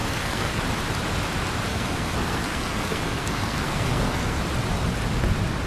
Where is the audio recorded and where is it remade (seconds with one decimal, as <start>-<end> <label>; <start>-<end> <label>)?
0.0-0.6 remade; 0.6-1.7 recorded; 1.7-4.4 remade; 4.4-5.7 recorded